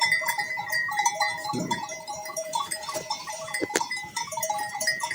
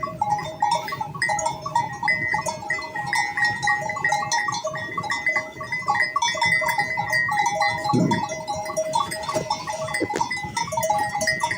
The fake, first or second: first